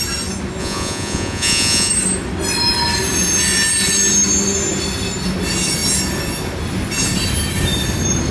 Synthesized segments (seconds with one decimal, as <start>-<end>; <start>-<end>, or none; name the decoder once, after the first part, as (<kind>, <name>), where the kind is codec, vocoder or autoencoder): 0.6-1.9 (vocoder, Vocos)